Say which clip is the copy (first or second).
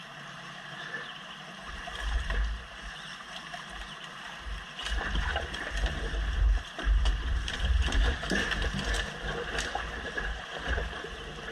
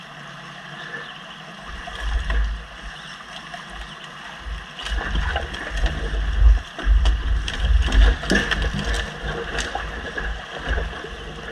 first